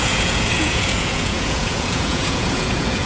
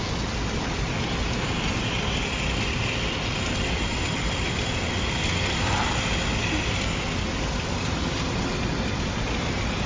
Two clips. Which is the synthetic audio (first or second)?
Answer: first